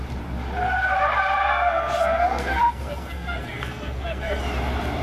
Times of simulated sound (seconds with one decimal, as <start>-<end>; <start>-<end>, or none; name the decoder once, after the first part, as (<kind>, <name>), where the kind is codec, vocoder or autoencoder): 1.4-4.4 (codec, SNAC)